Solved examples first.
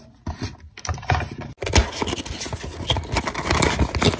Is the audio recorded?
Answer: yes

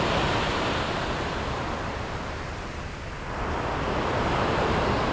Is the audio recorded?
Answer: yes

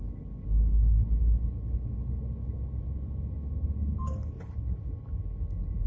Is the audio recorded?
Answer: yes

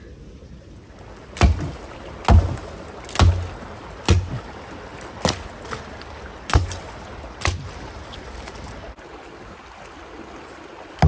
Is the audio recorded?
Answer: yes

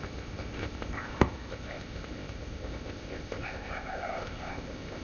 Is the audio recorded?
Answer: no